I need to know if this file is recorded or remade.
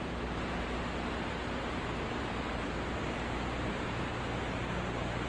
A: remade